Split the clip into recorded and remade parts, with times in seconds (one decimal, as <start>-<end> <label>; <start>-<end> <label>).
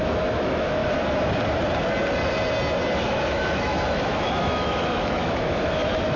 0.0-0.8 remade; 0.8-3.0 recorded; 3.0-6.2 remade